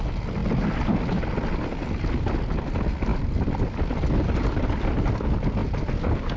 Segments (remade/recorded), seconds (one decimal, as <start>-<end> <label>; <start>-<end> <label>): 0.0-6.4 recorded